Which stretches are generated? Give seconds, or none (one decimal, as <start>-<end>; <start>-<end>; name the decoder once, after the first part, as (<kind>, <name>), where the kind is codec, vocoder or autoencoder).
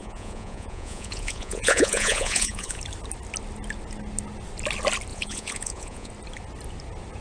0.0-2.8 (vocoder, Vocos); 5.1-6.1